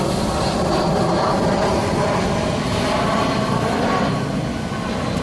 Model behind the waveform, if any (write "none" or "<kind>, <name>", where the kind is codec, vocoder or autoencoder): vocoder, BigVGAN v2